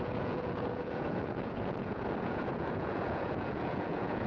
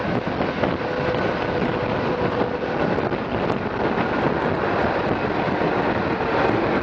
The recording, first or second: second